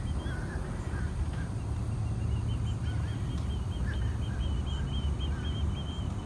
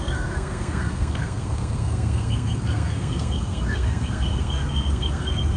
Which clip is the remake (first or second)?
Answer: second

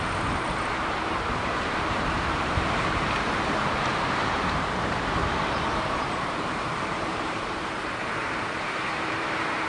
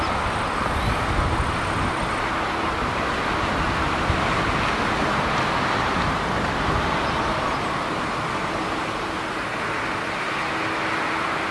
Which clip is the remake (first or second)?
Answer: first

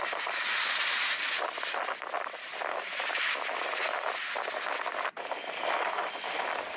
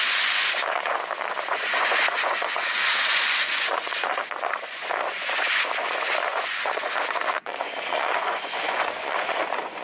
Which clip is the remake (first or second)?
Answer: second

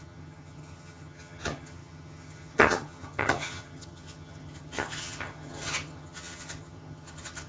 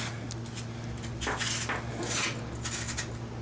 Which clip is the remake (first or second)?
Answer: first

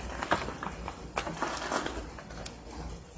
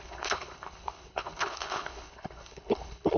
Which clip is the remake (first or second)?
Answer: second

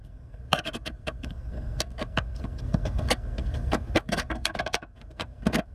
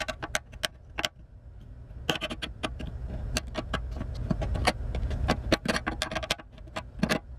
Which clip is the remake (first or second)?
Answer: first